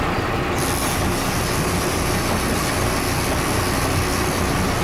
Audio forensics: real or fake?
real